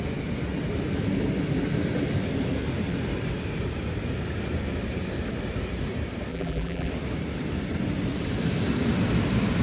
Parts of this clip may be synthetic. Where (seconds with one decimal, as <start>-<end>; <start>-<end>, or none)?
6.3-6.9